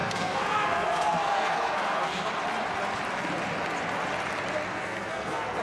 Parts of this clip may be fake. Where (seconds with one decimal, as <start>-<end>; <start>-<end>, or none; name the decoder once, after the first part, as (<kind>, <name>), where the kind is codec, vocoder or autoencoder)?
0.0-2.3 (codec, SNAC); 4.7-5.6